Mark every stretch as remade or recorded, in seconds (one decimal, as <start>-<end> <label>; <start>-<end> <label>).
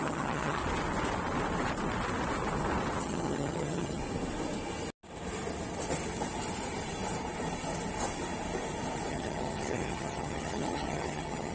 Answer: 0.0-0.6 remade; 0.6-3.0 recorded; 3.0-4.0 remade; 4.0-9.1 recorded; 9.1-11.5 remade